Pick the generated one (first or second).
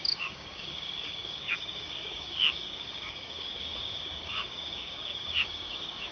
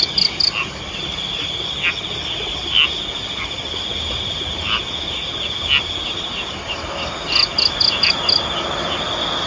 first